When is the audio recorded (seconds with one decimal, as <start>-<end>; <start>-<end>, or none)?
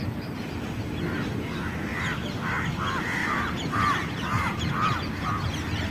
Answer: 0.0-3.2; 5.3-5.9